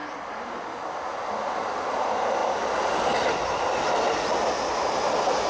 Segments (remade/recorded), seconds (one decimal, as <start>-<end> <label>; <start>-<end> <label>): 0.0-0.8 remade; 0.8-5.5 recorded